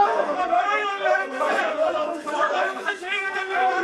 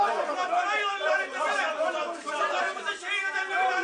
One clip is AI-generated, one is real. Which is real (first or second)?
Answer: second